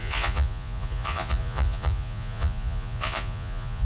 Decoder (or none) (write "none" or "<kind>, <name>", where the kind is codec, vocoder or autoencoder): vocoder, Vocos